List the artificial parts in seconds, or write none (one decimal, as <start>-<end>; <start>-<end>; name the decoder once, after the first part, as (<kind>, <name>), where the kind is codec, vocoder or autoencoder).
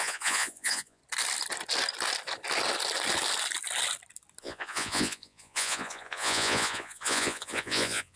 0.0-1.0 (vocoder, Vocos); 4.4-8.2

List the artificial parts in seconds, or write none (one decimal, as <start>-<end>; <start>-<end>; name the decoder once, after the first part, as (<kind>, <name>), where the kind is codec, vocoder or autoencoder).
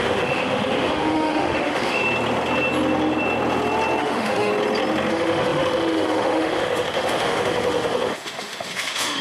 0.0-2.0 (autoencoder, DAC-VAE); 4.0-4.5; 5.1-9.2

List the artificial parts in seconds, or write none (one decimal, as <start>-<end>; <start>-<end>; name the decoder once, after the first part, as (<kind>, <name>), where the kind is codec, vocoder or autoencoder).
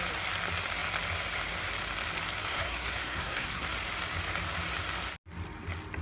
2.5-3.6 (codec, SNAC)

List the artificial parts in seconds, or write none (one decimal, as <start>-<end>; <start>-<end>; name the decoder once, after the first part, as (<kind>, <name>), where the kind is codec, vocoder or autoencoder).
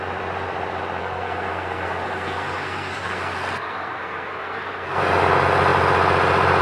1.0-5.0 (codec, SNAC)